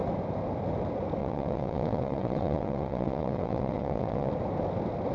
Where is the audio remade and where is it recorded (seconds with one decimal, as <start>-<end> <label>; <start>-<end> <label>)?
0.0-1.2 recorded; 1.2-4.3 remade; 4.3-5.1 recorded